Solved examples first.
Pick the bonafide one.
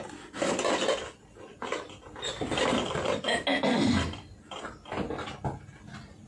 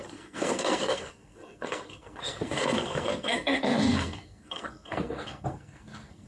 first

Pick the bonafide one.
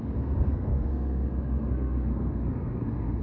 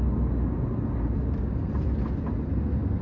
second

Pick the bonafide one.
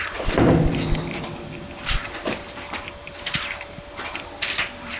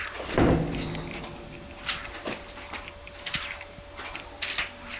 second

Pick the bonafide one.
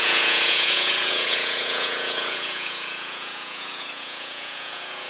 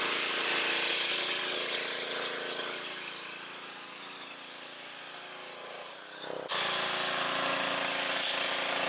second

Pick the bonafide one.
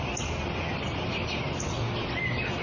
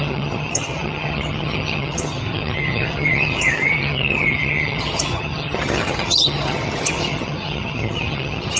first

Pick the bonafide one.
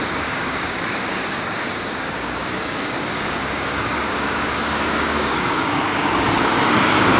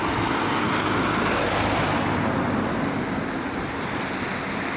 second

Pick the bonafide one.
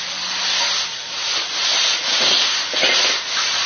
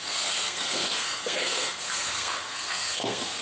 first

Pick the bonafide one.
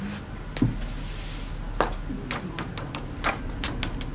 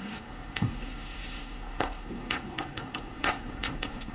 first